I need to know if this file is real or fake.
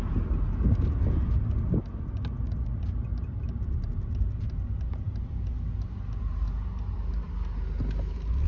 real